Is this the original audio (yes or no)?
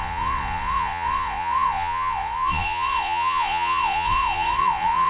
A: no